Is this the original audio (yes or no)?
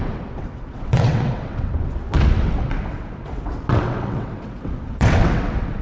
no